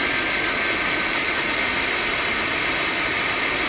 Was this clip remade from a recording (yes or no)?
no